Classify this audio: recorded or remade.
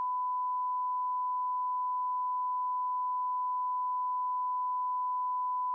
recorded